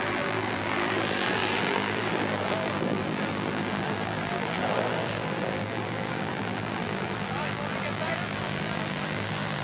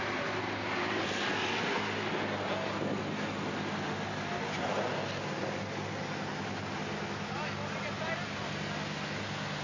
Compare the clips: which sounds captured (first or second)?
second